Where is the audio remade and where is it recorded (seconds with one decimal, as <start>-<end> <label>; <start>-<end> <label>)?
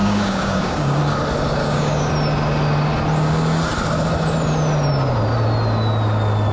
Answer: 0.0-1.0 remade; 1.0-1.6 recorded; 1.6-2.1 remade; 2.1-6.5 recorded